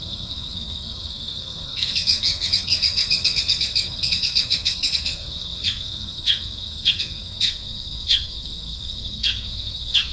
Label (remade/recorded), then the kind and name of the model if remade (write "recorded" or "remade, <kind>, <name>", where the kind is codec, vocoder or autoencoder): remade, codec, SNAC